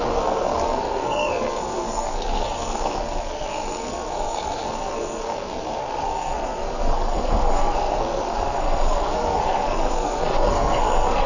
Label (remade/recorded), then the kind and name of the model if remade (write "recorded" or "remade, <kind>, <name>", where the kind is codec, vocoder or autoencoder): remade, codec, SNAC